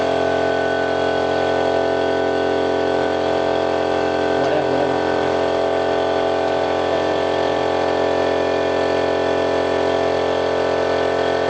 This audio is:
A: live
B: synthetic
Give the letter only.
A